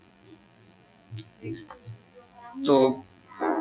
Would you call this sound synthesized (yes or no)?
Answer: yes